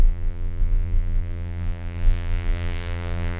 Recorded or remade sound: remade